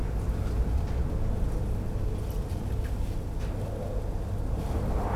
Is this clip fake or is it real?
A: real